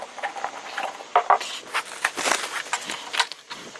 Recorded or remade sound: recorded